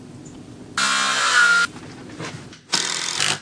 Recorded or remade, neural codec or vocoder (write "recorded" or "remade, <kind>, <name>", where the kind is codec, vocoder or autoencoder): recorded